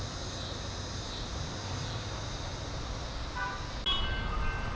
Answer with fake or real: real